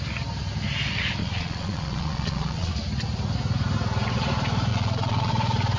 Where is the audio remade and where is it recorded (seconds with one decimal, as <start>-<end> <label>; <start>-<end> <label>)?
0.0-1.2 recorded; 1.2-2.7 remade; 2.7-4.7 recorded; 4.7-5.3 remade; 5.3-5.8 recorded